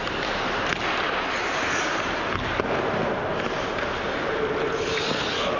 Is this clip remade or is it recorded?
recorded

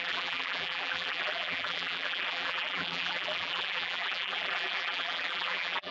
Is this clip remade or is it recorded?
remade